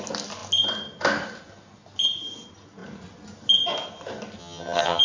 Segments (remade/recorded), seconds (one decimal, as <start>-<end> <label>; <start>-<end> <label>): 0.0-4.4 recorded; 4.4-5.0 remade